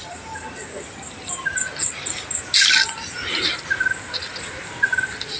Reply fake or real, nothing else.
real